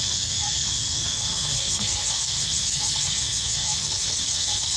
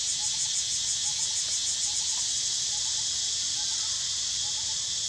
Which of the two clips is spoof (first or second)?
first